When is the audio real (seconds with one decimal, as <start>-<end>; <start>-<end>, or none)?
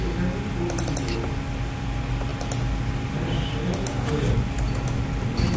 0.0-5.6